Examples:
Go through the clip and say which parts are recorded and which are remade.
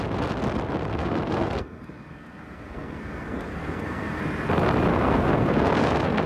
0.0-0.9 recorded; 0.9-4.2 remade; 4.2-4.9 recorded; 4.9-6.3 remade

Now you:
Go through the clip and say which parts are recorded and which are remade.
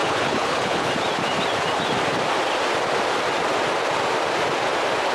0.0-0.9 remade; 0.9-5.1 recorded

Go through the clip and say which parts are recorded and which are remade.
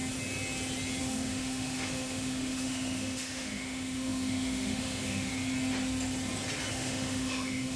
0.0-1.0 recorded; 1.0-5.3 remade; 5.3-6.7 recorded; 6.7-7.8 remade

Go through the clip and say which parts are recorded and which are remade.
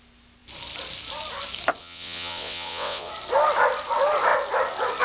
0.0-1.8 recorded; 1.8-3.1 remade; 3.1-5.0 recorded